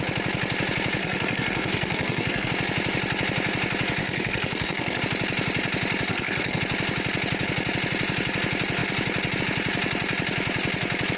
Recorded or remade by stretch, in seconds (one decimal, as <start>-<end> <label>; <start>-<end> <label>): 0.0-1.0 recorded; 1.0-2.5 remade; 2.5-4.0 recorded; 4.0-5.0 remade; 5.0-6.1 recorded; 6.1-6.6 remade; 6.6-11.2 recorded